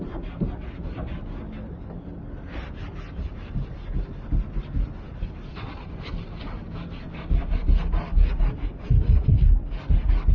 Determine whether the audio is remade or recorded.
recorded